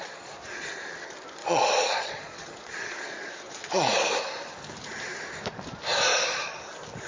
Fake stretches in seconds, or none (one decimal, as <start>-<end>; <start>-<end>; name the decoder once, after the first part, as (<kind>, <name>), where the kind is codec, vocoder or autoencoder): 0.0-0.7 (vocoder, Vocos); 1.4-4.0; 6.1-6.6